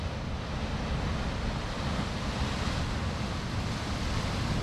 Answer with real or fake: real